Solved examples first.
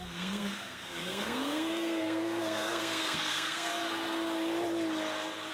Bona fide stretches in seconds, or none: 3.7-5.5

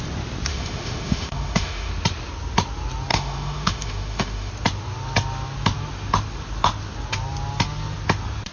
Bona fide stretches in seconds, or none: 0.0-0.5; 1.9-3.1; 4.5-8.5

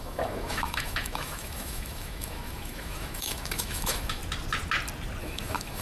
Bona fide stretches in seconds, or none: 4.2-5.2

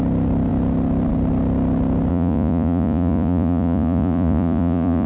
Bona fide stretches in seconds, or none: 0.0-2.1

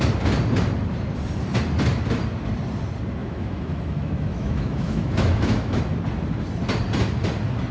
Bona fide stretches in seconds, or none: 0.0-3.2; 5.8-7.7

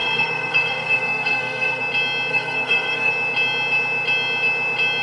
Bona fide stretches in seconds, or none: 1.8-2.3; 3.1-5.0

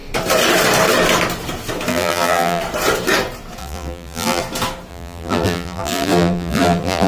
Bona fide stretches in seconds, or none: 0.0-1.9; 2.6-3.6; 4.4-4.9

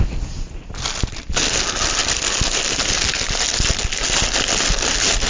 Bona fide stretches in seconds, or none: 0.0-5.3